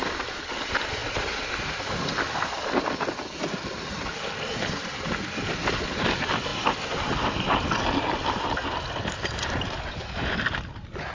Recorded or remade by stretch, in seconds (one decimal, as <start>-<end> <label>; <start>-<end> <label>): 0.0-11.1 recorded